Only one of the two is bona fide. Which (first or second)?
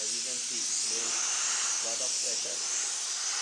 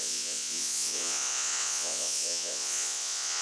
first